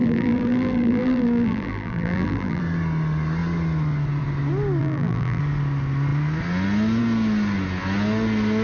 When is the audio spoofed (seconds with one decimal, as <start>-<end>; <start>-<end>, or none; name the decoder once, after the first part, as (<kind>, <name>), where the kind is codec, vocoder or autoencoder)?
0.0-2.6 (vocoder, BigVGAN v2); 4.8-5.4